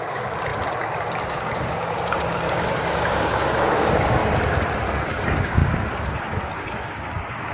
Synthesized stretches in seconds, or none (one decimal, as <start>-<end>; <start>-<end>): 0.0-4.2; 4.9-7.5